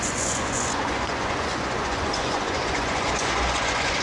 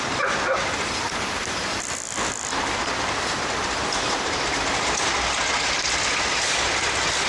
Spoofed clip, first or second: first